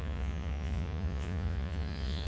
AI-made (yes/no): yes